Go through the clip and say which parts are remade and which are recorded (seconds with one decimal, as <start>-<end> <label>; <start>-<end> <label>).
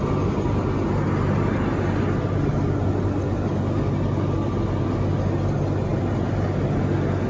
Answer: 0.0-7.3 recorded